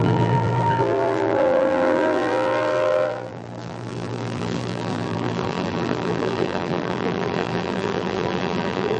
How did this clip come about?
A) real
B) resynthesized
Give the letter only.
B